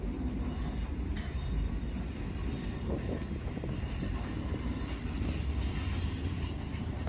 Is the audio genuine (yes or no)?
yes